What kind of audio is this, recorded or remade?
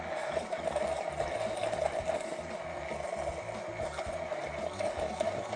recorded